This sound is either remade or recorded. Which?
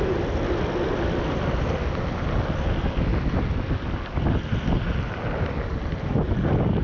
recorded